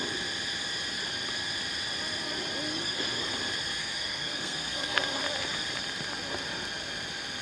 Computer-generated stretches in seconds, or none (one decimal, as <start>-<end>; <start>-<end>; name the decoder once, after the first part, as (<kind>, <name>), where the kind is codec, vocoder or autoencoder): 2.7-3.3 (codec, SNAC); 3.8-5.2